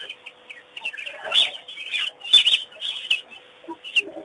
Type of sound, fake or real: real